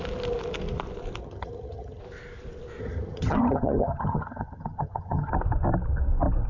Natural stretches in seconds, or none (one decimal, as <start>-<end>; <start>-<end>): 0.0-1.2; 2.0-2.8; 5.3-6.5